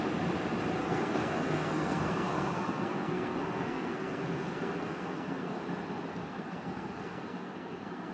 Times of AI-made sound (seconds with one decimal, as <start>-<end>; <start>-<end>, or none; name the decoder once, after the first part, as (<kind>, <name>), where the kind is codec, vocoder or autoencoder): 0.8-5.6 (codec, SNAC); 6.1-8.1